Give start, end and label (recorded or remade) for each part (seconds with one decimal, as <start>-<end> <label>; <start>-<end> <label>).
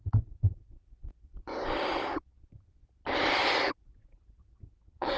0.0-1.5 remade; 1.5-3.7 recorded; 3.7-5.2 remade